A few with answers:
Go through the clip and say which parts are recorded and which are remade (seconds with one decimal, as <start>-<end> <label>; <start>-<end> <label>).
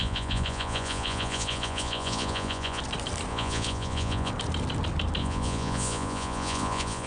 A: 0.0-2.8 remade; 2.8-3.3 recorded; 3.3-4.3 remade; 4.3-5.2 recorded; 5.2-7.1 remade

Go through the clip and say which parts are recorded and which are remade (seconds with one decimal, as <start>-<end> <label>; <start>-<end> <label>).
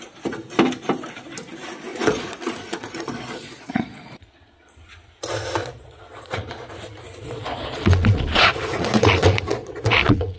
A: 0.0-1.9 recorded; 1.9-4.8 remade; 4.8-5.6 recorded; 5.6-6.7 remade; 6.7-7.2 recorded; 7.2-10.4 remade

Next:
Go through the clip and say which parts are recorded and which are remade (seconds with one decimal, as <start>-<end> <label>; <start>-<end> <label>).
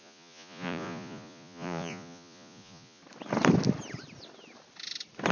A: 0.0-3.0 remade; 3.0-5.3 recorded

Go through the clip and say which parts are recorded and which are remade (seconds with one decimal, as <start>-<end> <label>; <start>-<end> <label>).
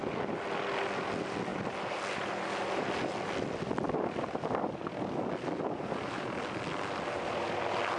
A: 0.0-8.0 recorded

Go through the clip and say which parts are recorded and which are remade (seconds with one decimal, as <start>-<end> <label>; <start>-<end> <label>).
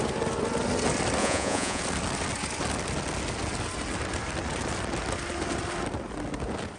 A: 0.0-1.2 recorded; 1.2-1.8 remade; 1.8-6.8 recorded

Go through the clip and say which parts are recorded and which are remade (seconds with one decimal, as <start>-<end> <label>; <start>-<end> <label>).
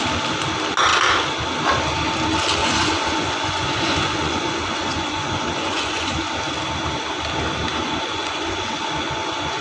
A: 0.0-2.6 recorded; 2.6-6.3 remade; 6.3-7.8 recorded; 7.8-9.6 remade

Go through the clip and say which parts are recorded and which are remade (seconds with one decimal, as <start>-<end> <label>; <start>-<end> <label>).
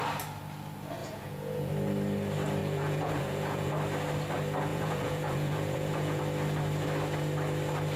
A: 0.0-1.0 recorded; 1.0-1.7 remade; 1.7-2.6 recorded; 2.6-3.7 remade; 3.7-4.7 recorded; 4.7-6.2 remade; 6.2-8.0 recorded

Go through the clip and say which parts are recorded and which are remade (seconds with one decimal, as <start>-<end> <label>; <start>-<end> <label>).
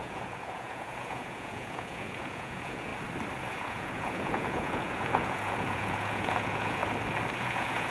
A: 0.0-2.9 remade; 2.9-3.5 recorded; 3.5-6.8 remade; 6.8-7.4 recorded; 7.4-7.9 remade